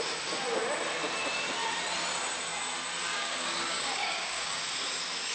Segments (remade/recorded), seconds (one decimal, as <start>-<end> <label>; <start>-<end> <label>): 0.0-3.0 recorded; 3.0-4.6 remade; 4.6-5.3 recorded